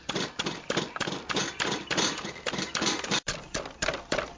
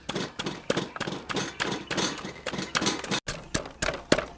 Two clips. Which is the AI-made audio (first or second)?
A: first